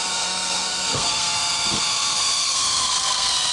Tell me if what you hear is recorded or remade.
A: remade